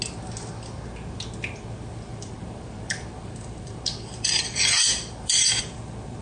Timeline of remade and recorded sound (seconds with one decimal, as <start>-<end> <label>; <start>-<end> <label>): 0.0-2.1 recorded; 2.1-5.8 remade; 5.8-6.2 recorded